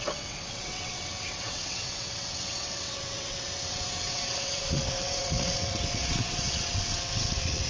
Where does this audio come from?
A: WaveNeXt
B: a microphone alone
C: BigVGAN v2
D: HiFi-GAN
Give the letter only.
A